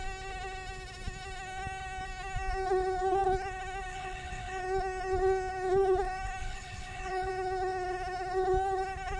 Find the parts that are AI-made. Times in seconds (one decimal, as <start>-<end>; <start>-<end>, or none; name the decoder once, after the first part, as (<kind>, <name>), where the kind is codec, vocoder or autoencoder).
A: 3.9-4.6 (codec, HILCodec); 6.4-7.3